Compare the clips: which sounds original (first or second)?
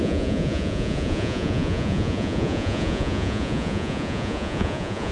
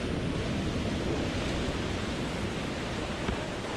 second